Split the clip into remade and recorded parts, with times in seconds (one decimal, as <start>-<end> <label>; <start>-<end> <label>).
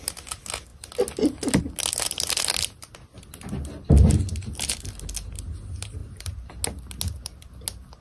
0.0-8.0 recorded